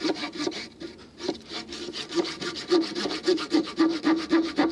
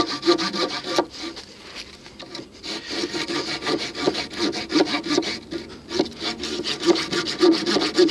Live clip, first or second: second